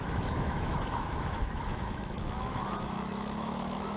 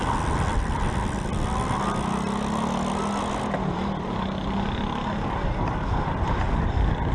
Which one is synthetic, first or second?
first